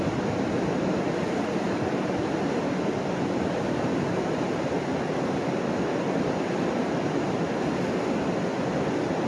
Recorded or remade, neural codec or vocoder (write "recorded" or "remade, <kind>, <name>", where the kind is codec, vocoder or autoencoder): recorded